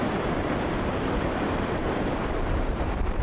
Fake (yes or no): yes